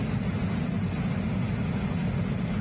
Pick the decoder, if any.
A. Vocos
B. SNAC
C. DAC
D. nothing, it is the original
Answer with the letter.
D